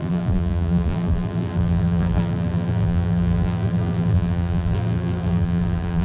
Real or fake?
fake